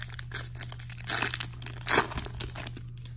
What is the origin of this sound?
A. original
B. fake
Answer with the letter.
A